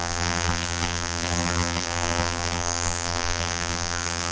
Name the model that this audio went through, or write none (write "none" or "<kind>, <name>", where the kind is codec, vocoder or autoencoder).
vocoder, BigVGAN v2